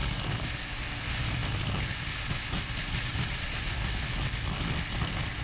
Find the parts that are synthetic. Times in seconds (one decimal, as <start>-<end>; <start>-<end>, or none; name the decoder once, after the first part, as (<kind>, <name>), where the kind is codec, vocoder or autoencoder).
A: none